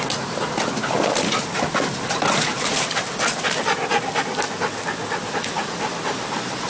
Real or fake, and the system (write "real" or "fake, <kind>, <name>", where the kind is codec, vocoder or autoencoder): real